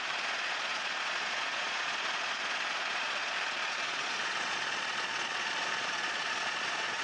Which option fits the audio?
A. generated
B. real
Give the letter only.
A